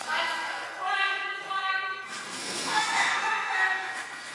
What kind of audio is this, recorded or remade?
remade